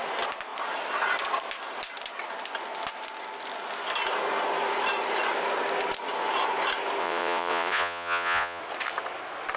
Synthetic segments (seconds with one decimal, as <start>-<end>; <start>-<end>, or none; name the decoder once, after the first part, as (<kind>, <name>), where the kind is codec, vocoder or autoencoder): 7.0-8.6 (vocoder, Vocos)